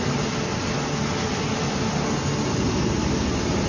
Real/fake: real